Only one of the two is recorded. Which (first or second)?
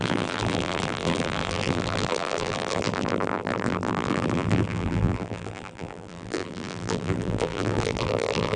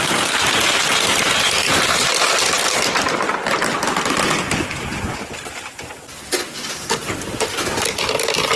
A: second